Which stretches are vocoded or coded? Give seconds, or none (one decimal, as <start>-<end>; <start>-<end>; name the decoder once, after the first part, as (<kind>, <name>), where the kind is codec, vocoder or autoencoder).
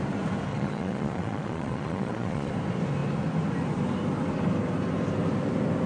0.5-2.5 (vocoder, Vocos)